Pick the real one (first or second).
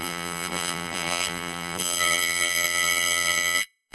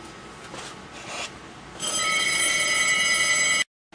second